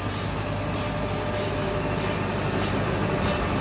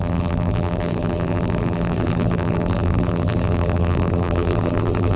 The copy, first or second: second